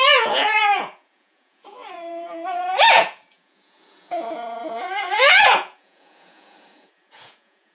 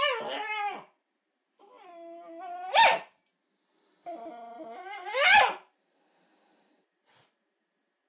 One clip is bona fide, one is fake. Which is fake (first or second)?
first